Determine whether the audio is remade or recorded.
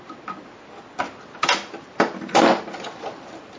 recorded